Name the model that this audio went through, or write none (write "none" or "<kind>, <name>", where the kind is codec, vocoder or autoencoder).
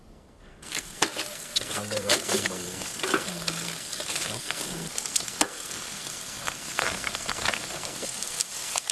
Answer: codec, SNAC